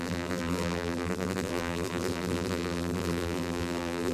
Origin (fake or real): fake